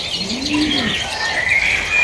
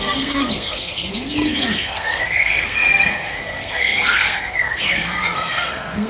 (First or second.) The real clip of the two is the first